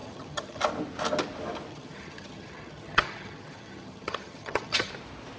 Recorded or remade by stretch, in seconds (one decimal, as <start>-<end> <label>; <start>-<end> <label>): 0.0-0.6 remade; 0.6-1.7 recorded; 1.7-4.9 remade; 4.9-5.4 recorded